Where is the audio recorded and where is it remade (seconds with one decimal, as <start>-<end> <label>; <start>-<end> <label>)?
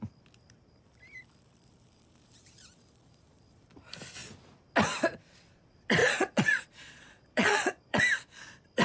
0.0-6.0 recorded; 6.0-8.0 remade; 8.0-8.8 recorded